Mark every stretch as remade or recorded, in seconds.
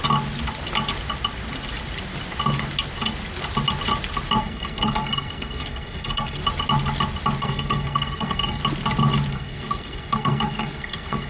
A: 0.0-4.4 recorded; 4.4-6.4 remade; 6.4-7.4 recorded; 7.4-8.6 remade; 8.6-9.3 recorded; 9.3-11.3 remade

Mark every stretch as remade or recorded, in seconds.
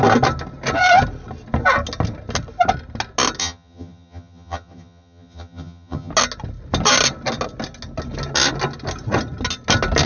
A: 0.0-3.4 recorded; 3.4-6.1 remade; 6.1-10.1 recorded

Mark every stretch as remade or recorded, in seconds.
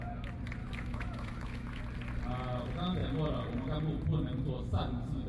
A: 0.0-0.6 recorded; 0.6-1.8 remade; 1.8-5.3 recorded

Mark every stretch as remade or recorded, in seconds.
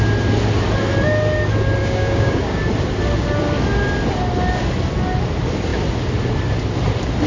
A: 0.0-1.8 recorded; 1.8-2.6 remade; 2.6-7.3 recorded